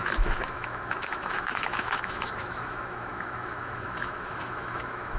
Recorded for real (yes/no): no